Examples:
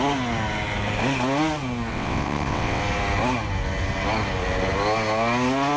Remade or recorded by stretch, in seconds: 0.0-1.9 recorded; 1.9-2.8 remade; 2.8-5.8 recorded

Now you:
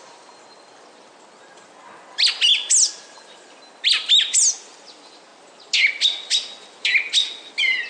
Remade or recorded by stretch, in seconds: 0.0-7.9 recorded

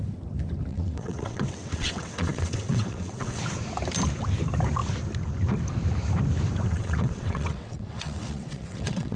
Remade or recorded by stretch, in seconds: 0.0-0.7 recorded; 0.7-3.4 remade; 3.4-6.7 recorded; 6.7-9.2 remade